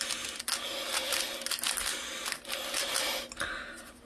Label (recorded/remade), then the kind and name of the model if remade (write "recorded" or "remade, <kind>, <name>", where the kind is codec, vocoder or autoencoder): recorded